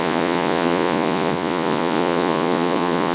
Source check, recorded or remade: remade